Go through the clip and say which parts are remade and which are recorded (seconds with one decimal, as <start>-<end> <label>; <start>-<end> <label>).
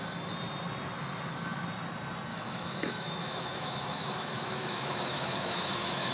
0.0-2.3 recorded; 2.3-6.1 remade